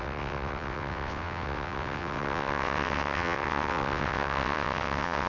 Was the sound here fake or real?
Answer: fake